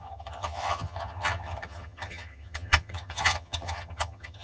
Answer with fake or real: fake